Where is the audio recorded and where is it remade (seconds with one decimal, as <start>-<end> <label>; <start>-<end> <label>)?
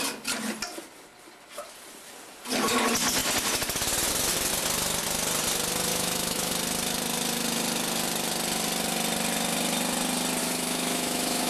0.0-5.9 recorded; 5.9-6.5 remade; 6.5-10.4 recorded; 10.4-11.5 remade